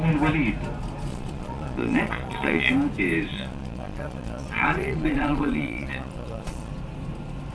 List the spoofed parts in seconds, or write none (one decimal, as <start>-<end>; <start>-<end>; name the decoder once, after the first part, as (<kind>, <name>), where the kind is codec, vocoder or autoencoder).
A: 1.1-2.7 (vocoder, Vocos); 3.3-6.7

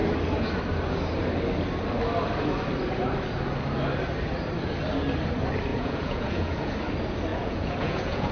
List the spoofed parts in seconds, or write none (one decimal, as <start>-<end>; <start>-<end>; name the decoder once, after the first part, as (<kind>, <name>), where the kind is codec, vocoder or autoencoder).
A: 5.7-6.7 (vocoder, Vocos); 7.3-8.3

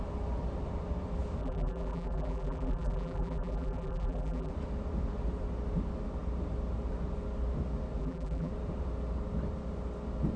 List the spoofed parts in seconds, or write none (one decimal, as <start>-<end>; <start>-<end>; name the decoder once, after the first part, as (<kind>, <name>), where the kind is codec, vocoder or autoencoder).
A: 1.4-4.5 (vocoder, BigVGAN v2); 8.0-8.5

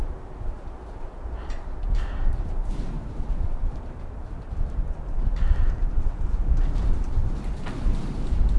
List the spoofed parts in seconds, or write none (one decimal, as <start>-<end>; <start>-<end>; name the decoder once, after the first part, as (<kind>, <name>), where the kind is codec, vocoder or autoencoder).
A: 1.7-8.6 (vocoder, BigVGAN v2)